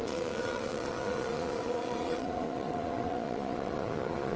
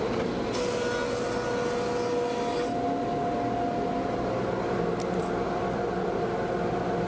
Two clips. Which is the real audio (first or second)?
second